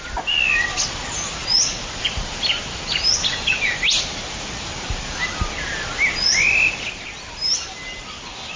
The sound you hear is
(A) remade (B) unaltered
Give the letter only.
B